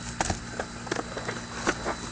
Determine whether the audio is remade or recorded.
recorded